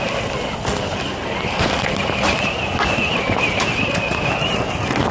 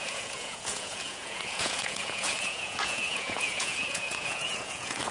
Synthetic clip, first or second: second